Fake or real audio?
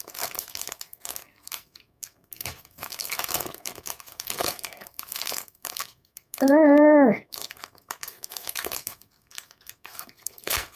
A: fake